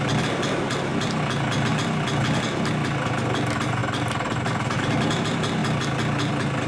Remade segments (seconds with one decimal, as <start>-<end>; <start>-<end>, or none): none